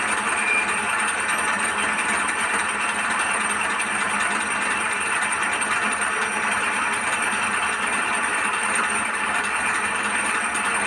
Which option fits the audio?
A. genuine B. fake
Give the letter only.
A